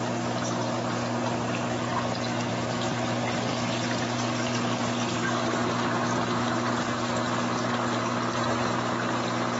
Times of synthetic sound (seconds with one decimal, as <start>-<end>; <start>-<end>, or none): none